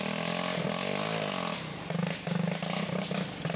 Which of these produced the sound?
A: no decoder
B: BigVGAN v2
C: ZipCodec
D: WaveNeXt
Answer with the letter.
A